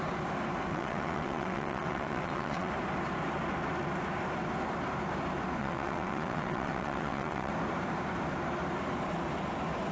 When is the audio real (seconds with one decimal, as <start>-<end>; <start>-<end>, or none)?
0.0-0.7; 2.7-5.6; 7.5-9.9